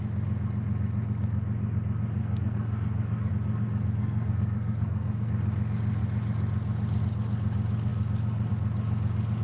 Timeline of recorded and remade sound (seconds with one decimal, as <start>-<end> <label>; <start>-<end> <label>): 0.0-2.2 recorded; 2.2-3.3 remade; 3.3-4.0 recorded; 4.0-5.3 remade; 5.3-9.4 recorded